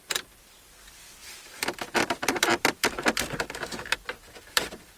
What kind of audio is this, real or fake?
fake